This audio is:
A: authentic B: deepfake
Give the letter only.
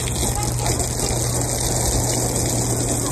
A